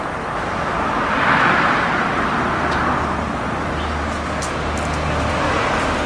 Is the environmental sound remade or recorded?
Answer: recorded